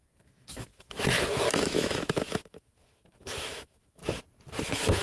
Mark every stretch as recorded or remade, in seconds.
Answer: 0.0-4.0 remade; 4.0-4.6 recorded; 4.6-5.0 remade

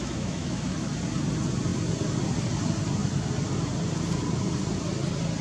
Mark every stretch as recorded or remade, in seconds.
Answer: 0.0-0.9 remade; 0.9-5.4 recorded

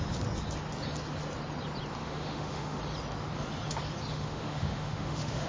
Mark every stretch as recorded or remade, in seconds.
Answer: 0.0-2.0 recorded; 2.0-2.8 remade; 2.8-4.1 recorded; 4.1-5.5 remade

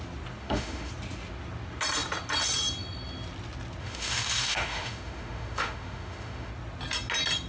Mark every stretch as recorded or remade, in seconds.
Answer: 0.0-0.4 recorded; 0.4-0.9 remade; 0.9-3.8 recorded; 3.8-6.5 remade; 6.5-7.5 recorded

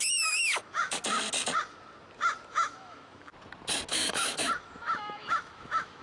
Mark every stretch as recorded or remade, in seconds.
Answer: 0.0-1.0 remade; 1.0-2.5 recorded; 2.5-3.3 remade; 3.3-3.9 recorded; 3.9-6.0 remade